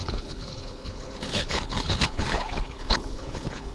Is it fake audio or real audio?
fake